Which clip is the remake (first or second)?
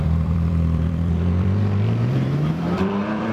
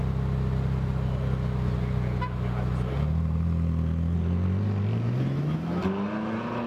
first